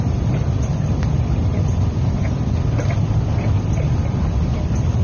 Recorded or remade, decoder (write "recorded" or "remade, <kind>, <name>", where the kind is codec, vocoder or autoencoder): remade, vocoder, BigVGAN v2